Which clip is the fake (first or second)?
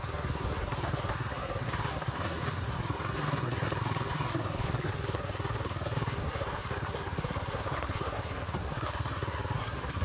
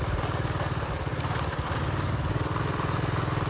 first